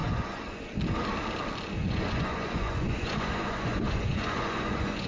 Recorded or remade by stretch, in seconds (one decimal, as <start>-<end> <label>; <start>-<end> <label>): 0.0-0.8 remade; 0.8-1.8 recorded; 1.8-5.1 remade

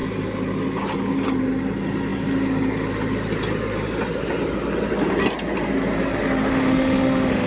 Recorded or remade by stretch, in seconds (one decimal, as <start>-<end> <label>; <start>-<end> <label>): 0.0-6.5 recorded; 6.5-7.5 remade